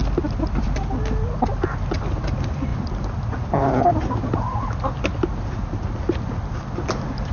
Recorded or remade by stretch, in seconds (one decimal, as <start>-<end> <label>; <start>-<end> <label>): 0.0-0.8 remade; 0.8-2.7 recorded; 2.7-3.9 remade; 3.9-7.3 recorded